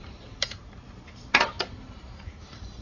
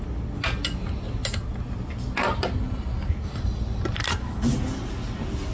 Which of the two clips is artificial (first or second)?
first